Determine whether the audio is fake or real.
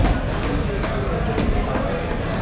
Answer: real